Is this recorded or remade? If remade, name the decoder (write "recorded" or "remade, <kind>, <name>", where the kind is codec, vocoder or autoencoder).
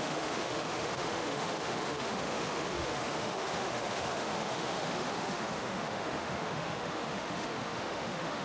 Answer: remade, autoencoder, DAC-VAE